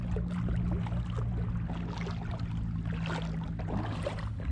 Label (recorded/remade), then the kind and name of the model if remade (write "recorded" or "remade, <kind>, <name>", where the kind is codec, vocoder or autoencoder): recorded